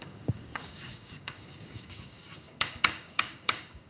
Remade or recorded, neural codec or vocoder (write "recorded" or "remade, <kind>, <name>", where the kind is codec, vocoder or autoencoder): remade, codec, DAC